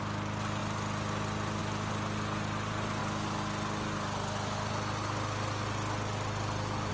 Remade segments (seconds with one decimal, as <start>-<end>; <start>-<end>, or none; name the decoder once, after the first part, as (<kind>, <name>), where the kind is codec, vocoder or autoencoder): none